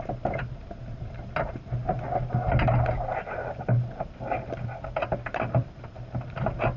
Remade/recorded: recorded